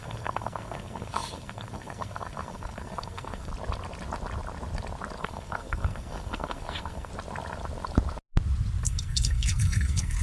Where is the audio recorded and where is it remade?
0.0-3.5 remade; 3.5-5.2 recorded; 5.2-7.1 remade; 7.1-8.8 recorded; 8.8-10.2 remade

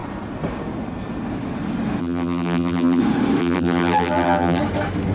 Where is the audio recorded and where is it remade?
0.0-2.0 recorded; 2.0-3.0 remade; 3.0-3.4 recorded; 3.4-4.6 remade; 4.6-5.1 recorded

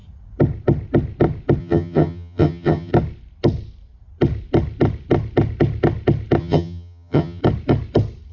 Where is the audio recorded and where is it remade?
0.0-1.6 recorded; 1.6-2.9 remade; 2.9-6.4 recorded; 6.4-7.4 remade; 7.4-8.3 recorded

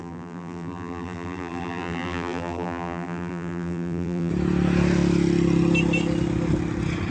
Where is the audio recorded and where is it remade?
0.0-4.3 remade; 4.3-7.1 recorded

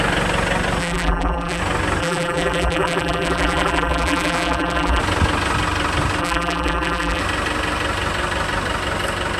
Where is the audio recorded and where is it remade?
0.0-0.8 recorded; 0.8-1.6 remade; 1.6-2.0 recorded; 2.0-5.0 remade; 5.0-6.2 recorded; 6.2-7.2 remade; 7.2-9.4 recorded

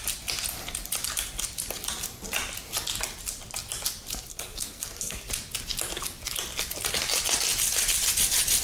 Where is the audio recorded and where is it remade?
0.0-4.3 recorded; 4.3-5.3 remade; 5.3-8.6 recorded

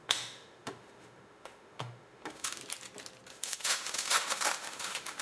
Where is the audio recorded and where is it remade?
0.0-2.6 remade; 2.6-3.3 recorded; 3.3-5.2 remade